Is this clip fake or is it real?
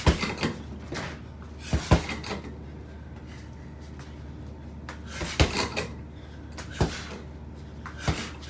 real